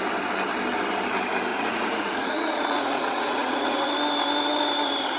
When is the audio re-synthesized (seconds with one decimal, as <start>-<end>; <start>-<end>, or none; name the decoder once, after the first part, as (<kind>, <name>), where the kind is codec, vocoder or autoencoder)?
1.5-3.9 (vocoder, Vocos)